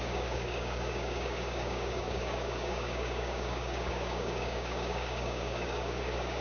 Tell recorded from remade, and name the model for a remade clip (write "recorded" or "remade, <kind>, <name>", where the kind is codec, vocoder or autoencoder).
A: remade, codec, DAC